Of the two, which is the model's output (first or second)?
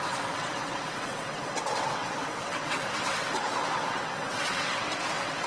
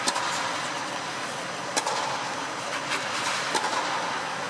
first